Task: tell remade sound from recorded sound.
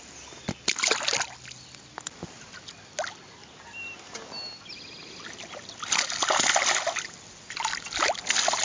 recorded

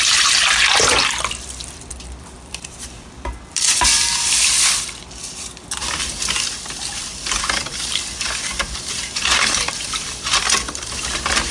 remade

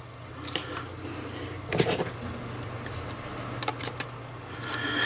recorded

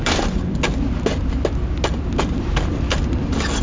recorded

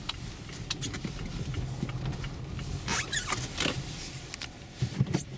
recorded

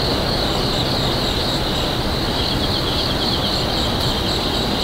recorded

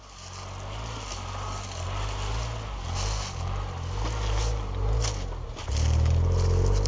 recorded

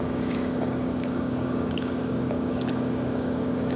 remade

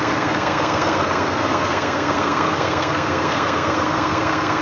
remade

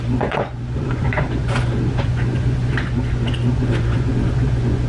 remade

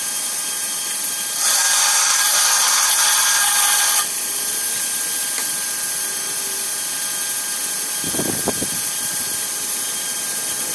recorded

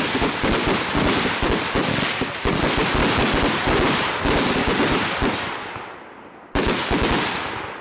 recorded